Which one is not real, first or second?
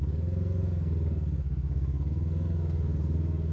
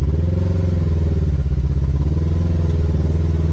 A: first